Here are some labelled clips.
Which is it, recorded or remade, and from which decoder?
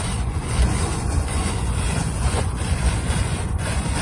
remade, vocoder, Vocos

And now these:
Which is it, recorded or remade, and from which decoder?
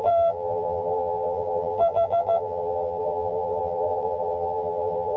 remade, vocoder, BigVGAN v2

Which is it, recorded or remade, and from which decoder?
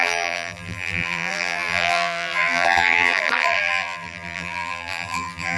remade, vocoder, BigVGAN v2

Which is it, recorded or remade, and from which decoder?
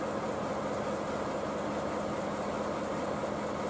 recorded